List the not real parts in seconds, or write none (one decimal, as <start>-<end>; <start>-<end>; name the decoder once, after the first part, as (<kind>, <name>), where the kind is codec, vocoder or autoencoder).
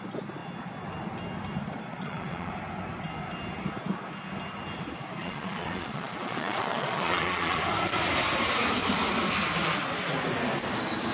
1.9-2.5 (vocoder, Vocos); 5.2-7.6